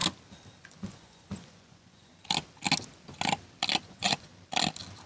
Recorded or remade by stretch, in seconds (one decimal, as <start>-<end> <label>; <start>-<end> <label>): 0.0-0.6 recorded; 0.6-2.1 remade; 2.1-3.8 recorded; 3.8-4.3 remade; 4.3-5.1 recorded